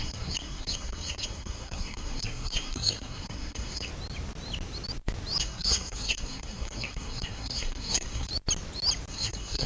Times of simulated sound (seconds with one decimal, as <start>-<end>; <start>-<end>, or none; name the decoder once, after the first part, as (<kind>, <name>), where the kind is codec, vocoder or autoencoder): 0.0-3.9 (codec, SNAC); 5.4-8.3; 9.1-9.7